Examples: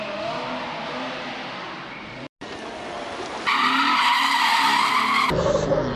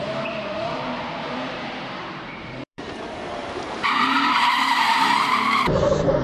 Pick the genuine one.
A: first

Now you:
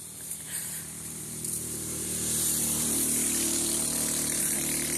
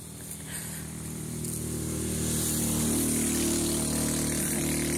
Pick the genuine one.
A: second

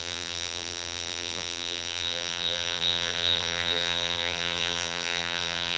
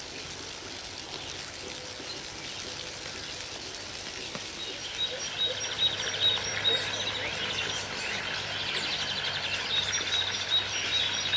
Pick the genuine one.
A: second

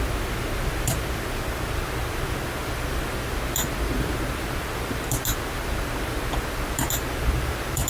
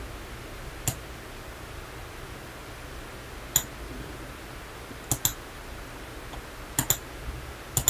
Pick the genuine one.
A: second